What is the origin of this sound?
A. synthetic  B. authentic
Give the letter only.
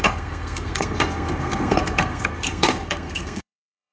A